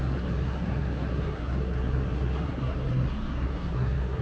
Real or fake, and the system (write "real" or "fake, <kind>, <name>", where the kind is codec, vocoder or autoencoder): fake, codec, SNAC